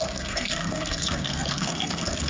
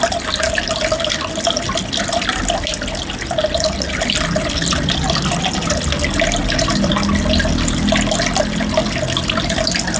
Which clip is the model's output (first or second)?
first